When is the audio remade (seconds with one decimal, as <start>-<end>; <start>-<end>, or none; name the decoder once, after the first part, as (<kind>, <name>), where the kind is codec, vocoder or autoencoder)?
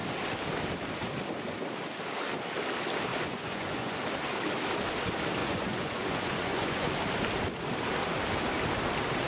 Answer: 3.1-4.0 (vocoder, Vocos); 5.4-6.9